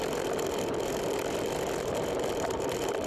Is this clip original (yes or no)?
no